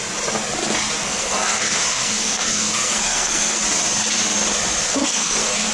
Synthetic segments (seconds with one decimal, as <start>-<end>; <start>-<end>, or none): 1.0-3.6; 4.8-5.7